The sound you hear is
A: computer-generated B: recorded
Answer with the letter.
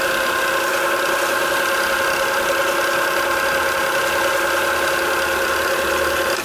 B